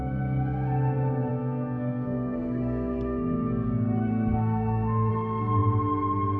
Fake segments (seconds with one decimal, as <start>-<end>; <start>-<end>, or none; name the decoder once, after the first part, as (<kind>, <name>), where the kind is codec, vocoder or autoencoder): 1.3-5.1 (codec, SNAC)